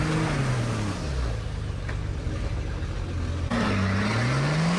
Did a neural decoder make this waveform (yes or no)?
no